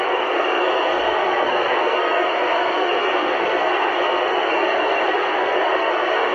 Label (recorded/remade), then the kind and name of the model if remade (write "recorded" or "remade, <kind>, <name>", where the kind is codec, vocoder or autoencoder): remade, codec, SNAC